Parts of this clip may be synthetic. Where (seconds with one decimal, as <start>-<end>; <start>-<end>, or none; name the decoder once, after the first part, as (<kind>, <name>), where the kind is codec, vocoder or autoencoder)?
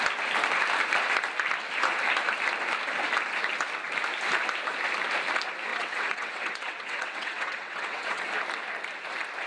5.7-8.3 (vocoder, WaveNeXt)